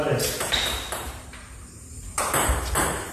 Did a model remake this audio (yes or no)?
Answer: yes